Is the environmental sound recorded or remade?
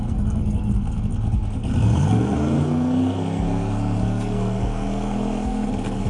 remade